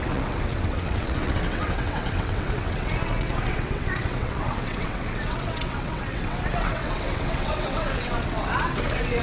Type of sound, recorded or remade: remade